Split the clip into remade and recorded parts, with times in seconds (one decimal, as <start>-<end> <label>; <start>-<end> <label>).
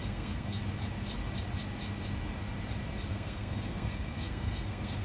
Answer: 0.0-0.6 remade; 0.6-3.1 recorded; 3.1-5.0 remade